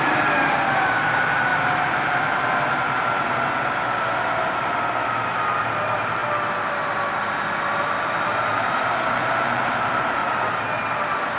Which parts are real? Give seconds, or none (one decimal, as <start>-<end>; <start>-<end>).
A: 1.5-5.6; 6.2-7.8; 10.2-10.9